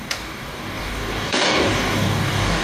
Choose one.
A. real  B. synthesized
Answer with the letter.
B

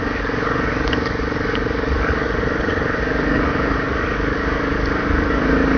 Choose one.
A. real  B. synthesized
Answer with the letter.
B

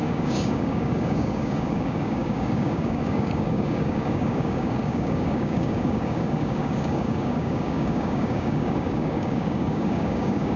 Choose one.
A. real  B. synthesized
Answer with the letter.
B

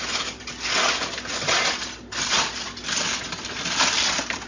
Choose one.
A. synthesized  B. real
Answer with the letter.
B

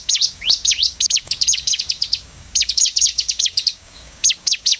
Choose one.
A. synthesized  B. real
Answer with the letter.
A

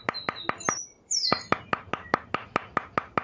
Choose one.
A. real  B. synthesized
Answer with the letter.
A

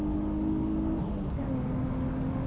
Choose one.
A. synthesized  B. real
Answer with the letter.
A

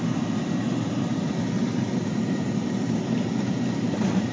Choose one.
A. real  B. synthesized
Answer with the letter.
A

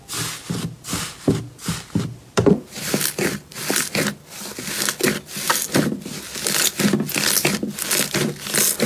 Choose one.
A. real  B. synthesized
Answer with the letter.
A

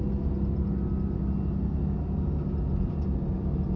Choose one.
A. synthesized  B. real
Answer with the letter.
B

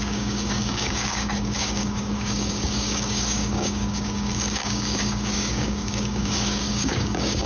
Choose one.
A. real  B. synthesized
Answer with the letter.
B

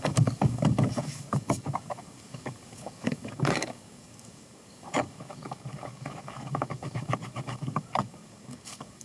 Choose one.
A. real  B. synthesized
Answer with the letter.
B